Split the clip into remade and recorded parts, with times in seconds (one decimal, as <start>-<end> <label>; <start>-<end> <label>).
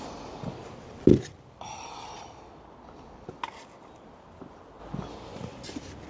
0.0-6.1 recorded